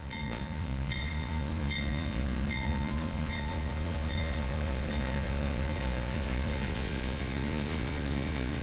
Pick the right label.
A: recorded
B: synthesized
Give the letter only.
B